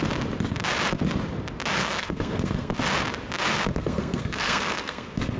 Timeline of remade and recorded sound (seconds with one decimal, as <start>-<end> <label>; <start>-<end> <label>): 0.0-1.8 recorded; 1.8-2.7 remade; 2.7-3.7 recorded; 3.7-5.4 remade